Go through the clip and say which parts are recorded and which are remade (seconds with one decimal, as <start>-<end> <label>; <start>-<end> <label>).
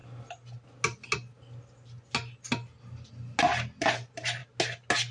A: 0.0-5.1 recorded